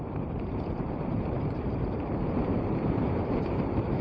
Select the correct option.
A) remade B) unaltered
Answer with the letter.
A